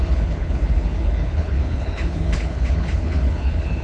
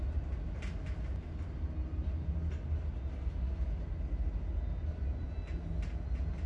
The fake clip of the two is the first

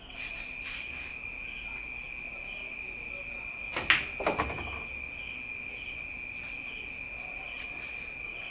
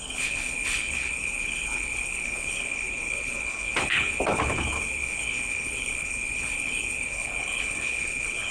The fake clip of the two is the second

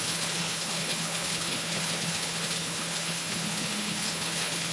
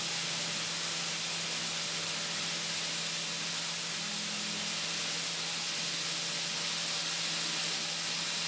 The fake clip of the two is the first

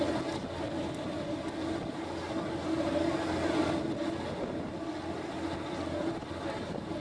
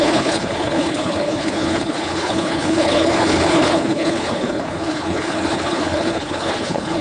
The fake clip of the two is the second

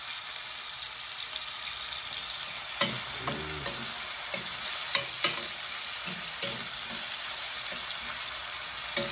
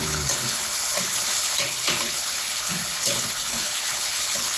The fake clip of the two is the second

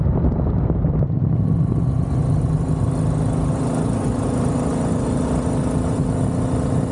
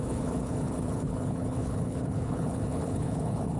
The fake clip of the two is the second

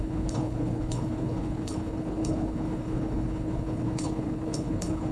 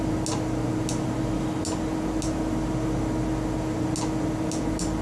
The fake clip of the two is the first